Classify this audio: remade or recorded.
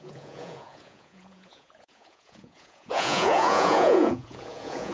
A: remade